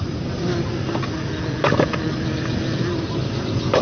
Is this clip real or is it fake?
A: real